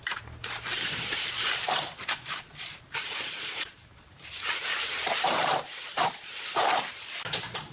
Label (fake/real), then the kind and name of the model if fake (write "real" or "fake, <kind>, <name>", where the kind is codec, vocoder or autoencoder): fake, vocoder, BigVGAN v2